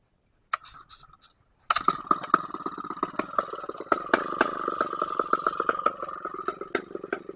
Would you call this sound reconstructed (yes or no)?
no